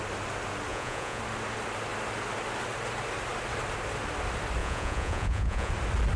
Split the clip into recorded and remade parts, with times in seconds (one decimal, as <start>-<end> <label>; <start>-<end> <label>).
0.0-0.7 recorded; 0.7-1.2 remade; 1.2-4.6 recorded; 4.6-5.7 remade; 5.7-6.2 recorded